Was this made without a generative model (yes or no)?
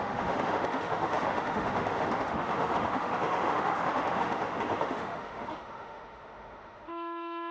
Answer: no